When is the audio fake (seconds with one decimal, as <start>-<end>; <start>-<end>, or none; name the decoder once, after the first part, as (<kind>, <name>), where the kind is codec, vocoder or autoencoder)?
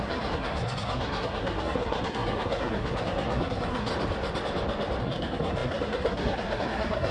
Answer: 0.0-3.9 (codec, SNAC); 5.0-7.1